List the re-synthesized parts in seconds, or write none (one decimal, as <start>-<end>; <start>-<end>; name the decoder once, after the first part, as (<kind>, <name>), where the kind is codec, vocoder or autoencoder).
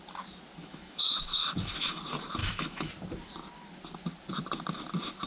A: 0.6-2.0 (autoencoder, DAC-VAE); 2.4-2.9